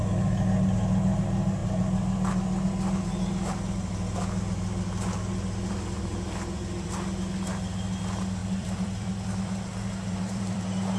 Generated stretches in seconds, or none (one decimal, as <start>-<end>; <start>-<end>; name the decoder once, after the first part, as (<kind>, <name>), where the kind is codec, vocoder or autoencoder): 8.4-10.6 (vocoder, BigVGAN v2)